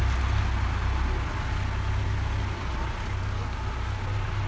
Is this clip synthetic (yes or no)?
no